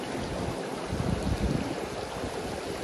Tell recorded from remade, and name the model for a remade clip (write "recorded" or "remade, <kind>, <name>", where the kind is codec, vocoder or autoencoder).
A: recorded